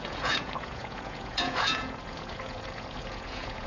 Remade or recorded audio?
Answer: remade